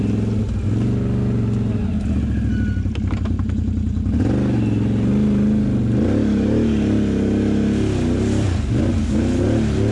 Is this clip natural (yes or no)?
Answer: yes